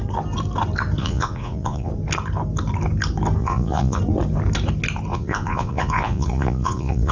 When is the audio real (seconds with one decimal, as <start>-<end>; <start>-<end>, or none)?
0.0-1.0; 1.9-3.4; 4.0-5.1